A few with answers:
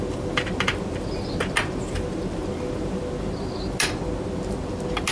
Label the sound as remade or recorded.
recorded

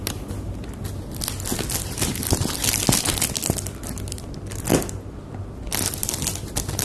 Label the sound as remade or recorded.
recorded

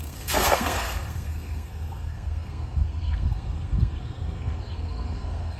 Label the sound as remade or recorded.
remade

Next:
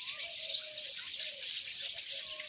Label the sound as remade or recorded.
recorded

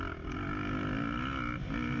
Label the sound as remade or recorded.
recorded